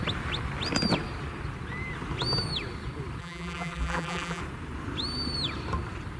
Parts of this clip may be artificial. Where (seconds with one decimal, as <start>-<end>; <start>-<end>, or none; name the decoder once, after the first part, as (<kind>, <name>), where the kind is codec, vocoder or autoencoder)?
3.2-4.4 (vocoder, BigVGAN v2)